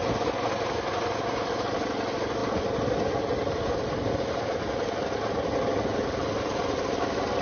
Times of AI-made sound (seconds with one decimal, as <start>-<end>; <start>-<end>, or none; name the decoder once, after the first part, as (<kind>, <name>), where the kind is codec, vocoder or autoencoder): none